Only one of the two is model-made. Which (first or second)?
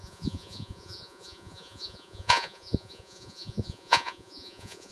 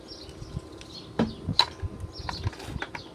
first